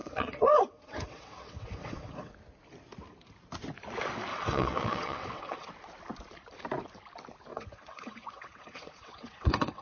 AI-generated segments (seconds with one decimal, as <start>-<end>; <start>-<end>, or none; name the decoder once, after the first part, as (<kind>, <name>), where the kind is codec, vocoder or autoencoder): 0.0-2.3 (vocoder, WaveNeXt); 4.3-5.7; 7.5-9.8

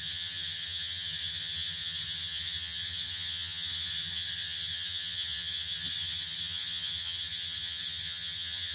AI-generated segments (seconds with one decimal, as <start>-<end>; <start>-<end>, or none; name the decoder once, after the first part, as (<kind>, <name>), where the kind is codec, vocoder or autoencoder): 0.0-8.7 (vocoder, HiFi-GAN)

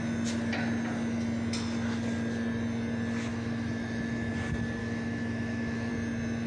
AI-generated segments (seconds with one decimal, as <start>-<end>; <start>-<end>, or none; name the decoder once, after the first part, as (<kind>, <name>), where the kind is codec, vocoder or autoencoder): 3.3-4.3 (autoencoder, DAC-VAE); 4.8-5.9

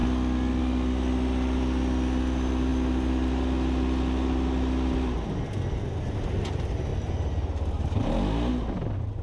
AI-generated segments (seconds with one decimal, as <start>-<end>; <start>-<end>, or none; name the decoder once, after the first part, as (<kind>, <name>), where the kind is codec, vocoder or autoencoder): none

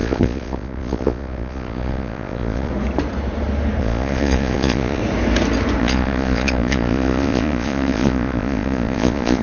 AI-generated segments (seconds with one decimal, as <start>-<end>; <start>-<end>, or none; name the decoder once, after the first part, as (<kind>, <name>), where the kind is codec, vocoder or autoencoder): 0.0-2.7 (vocoder, Vocos); 3.8-5.0; 5.8-9.4